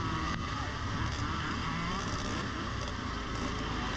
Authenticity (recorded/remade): recorded